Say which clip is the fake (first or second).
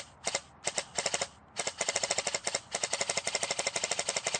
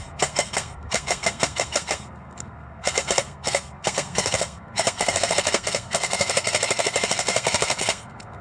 second